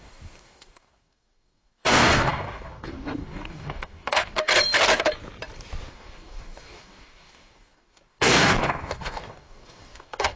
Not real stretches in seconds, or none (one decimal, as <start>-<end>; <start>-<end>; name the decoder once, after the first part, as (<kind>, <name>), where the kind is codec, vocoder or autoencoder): 0.0-4.5 (codec, DAC); 5.9-10.4